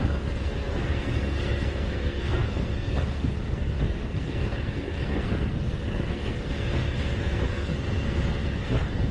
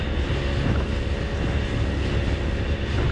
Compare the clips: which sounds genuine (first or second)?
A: second